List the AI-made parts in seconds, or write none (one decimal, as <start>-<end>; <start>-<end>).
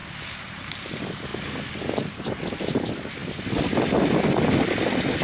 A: none